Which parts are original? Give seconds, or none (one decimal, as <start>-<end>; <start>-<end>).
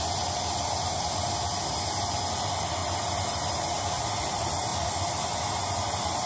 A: 0.0-4.7; 5.5-6.3